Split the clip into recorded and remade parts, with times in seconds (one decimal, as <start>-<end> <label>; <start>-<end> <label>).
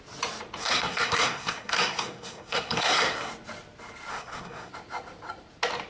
0.0-0.6 recorded; 0.6-3.3 remade; 3.3-4.1 recorded; 4.1-4.7 remade; 4.7-5.9 recorded